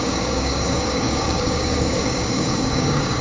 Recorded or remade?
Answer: remade